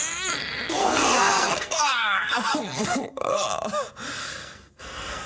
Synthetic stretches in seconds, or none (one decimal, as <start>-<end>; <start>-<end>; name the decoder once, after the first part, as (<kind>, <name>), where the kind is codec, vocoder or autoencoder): 0.8-3.5 (codec, SNAC); 4.2-5.3